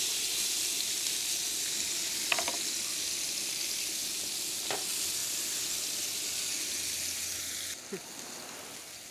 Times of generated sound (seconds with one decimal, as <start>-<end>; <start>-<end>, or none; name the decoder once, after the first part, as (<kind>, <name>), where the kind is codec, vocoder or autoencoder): none